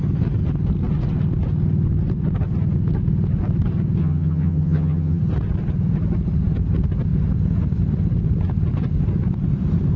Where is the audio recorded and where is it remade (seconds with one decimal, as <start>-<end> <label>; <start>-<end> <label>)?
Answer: 0.0-4.0 recorded; 4.0-5.2 remade; 5.2-10.0 recorded